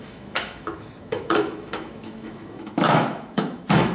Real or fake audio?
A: fake